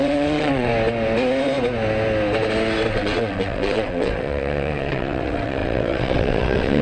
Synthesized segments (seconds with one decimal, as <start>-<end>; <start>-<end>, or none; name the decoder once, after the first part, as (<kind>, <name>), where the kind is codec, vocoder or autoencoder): 0.0-0.7 (vocoder, WaveNeXt); 2.9-6.8